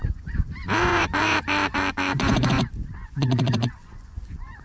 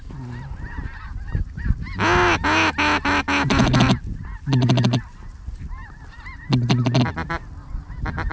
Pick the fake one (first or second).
first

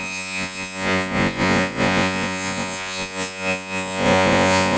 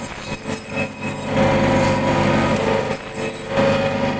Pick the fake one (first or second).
first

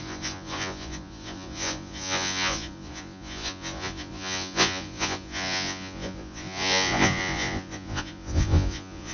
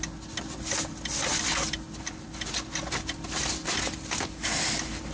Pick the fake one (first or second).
first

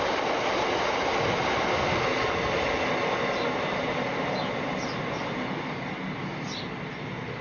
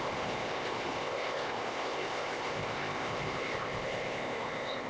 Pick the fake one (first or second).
second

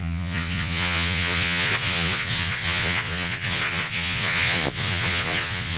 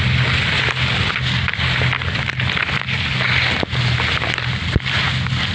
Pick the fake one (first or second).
first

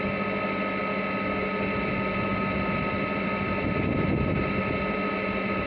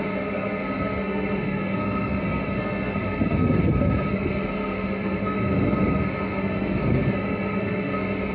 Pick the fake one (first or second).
second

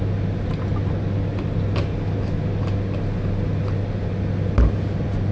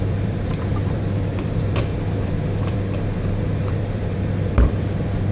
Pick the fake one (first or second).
second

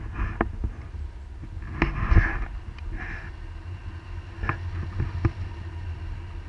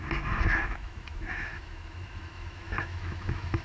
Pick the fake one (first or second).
second